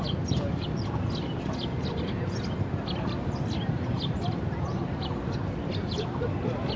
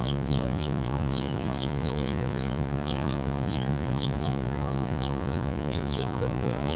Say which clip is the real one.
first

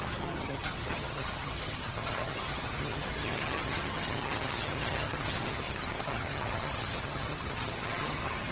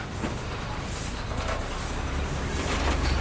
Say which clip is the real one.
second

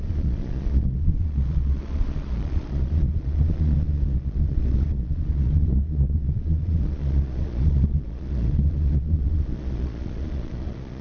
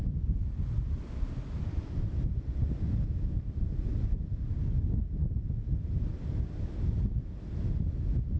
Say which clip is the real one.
second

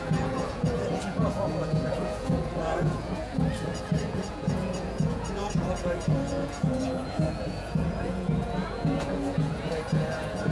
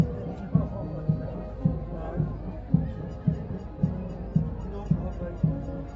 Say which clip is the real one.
second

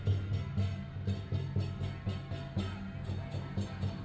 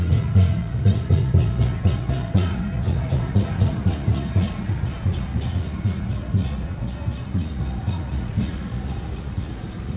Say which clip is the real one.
first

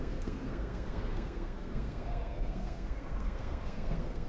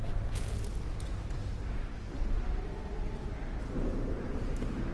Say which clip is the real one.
second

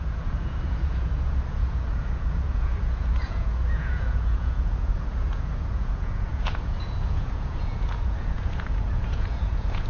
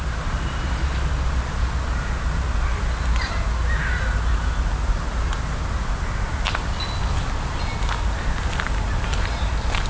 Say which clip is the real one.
second